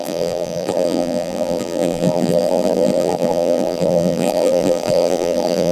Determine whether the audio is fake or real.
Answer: fake